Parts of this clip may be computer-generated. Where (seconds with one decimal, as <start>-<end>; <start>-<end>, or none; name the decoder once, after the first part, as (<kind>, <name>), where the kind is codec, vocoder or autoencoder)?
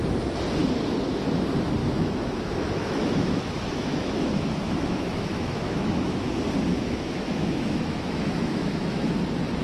1.8-6.3 (autoencoder, DAC-VAE); 6.7-9.1